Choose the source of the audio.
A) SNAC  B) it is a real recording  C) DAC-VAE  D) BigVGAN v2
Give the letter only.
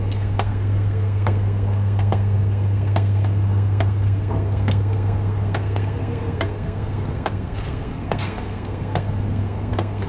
A